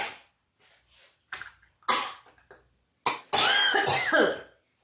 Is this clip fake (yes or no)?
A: no